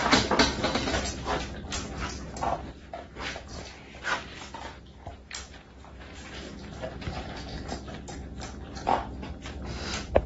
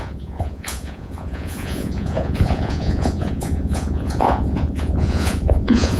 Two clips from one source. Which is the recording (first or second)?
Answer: first